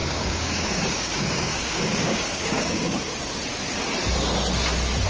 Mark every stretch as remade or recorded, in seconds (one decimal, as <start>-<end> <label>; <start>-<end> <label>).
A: 0.0-3.1 remade; 3.1-5.1 recorded